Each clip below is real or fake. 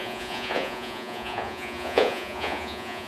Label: fake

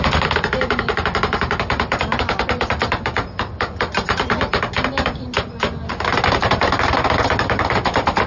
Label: real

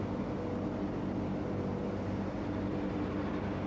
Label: real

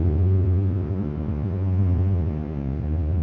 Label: fake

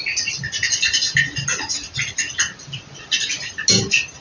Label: real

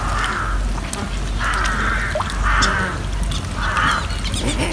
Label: real